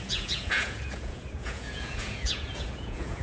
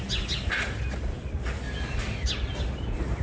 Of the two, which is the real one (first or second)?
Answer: second